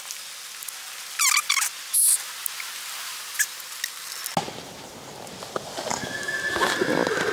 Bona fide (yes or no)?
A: yes